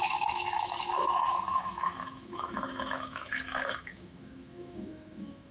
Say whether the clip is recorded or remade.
remade